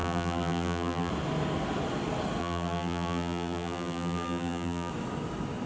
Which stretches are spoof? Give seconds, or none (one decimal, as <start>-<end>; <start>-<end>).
0.0-1.1; 2.4-4.9